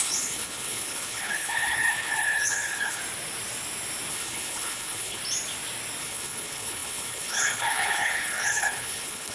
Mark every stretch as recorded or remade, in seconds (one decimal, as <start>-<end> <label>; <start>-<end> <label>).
0.0-3.0 remade; 3.0-4.1 recorded; 4.1-5.2 remade; 5.2-6.0 recorded; 6.0-9.3 remade